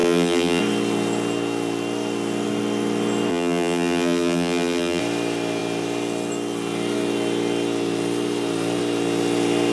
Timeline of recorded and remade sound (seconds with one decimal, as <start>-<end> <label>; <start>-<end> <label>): 0.0-0.6 remade; 0.6-3.3 recorded; 3.3-5.0 remade; 5.0-9.7 recorded